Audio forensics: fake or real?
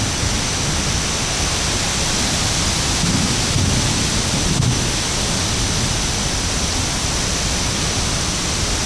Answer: real